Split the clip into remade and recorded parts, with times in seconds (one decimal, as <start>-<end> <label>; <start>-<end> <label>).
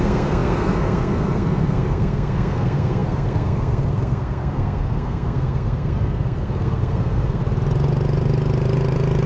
0.0-7.4 remade; 7.4-9.3 recorded